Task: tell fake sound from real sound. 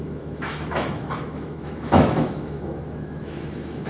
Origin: fake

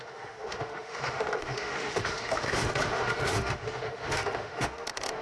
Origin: fake